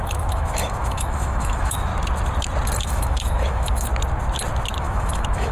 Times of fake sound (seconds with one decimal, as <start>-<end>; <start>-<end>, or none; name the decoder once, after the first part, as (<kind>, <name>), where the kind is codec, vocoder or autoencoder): 0.0-1.9 (autoencoder, DAC-VAE); 2.8-3.9; 4.8-5.5